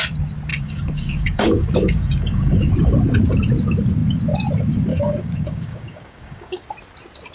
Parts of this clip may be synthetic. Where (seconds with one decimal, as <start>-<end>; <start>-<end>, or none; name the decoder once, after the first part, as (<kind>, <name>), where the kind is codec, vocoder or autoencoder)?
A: 0.5-2.7 (codec, DAC); 4.9-6.7